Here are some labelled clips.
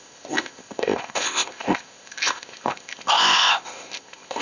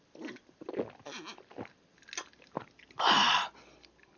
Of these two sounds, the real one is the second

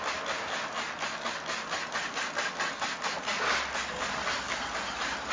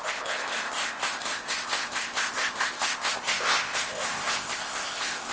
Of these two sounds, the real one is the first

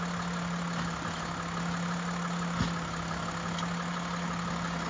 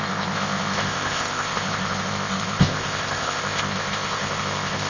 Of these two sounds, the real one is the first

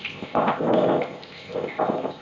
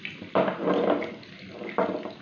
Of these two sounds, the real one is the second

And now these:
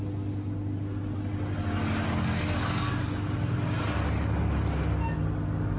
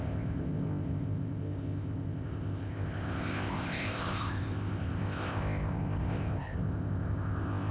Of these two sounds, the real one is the first